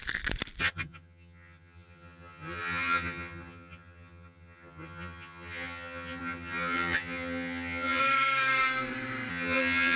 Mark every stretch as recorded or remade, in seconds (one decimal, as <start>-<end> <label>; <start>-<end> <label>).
0.0-0.6 recorded; 0.6-8.0 remade; 8.0-9.3 recorded; 9.3-10.0 remade